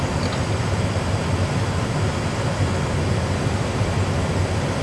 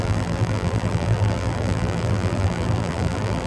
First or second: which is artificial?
second